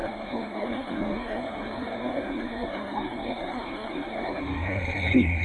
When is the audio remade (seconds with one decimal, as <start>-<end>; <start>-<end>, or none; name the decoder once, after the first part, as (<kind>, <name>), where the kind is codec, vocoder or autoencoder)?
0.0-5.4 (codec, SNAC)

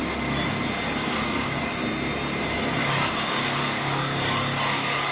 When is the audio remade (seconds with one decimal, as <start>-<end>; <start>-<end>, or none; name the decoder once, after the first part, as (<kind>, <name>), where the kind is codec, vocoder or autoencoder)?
1.0-1.6 (codec, DAC); 2.8-5.1

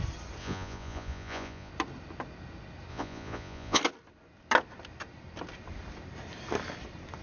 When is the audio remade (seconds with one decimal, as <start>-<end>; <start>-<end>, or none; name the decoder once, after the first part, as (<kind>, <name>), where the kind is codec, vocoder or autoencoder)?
0.4-1.7 (vocoder, Vocos); 2.9-3.8

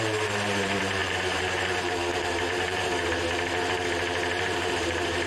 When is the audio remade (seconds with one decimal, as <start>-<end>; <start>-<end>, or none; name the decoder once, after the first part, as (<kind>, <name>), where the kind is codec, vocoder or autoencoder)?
0.0-2.9 (vocoder, BigVGAN v2); 4.4-5.3

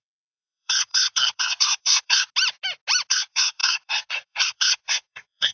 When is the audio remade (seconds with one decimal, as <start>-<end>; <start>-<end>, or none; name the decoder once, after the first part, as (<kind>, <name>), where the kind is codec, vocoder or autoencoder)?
0.0-2.3 (codec, SNAC); 3.1-5.5

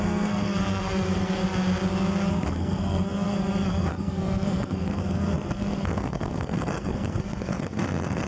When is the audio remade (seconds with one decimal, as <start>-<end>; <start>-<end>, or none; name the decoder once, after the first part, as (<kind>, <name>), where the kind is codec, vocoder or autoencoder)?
0.0-1.4 (codec, SNAC); 2.3-8.3